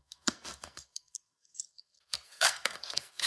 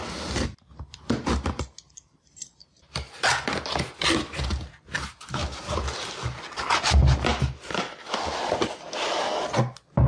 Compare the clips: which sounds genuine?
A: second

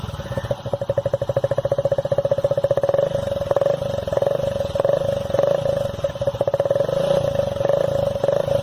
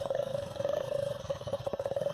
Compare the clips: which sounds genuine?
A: first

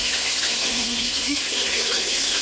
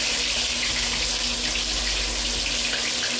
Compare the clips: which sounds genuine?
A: second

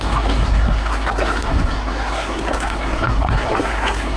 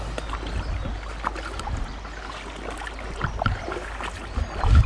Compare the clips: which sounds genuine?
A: second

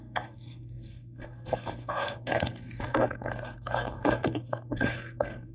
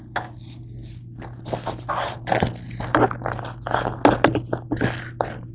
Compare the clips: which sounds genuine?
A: second